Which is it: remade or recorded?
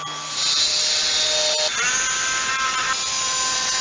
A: recorded